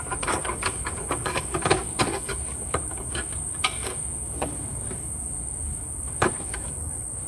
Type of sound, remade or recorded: remade